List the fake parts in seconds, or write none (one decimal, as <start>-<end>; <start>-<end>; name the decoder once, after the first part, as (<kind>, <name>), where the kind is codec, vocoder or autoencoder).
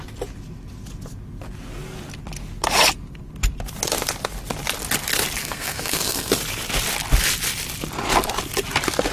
5.4-6.3 (codec, SNAC)